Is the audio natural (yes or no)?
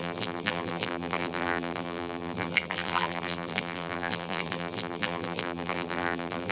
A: no